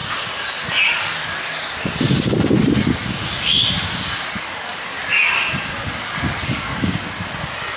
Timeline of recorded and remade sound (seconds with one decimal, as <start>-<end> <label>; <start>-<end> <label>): 0.0-7.8 recorded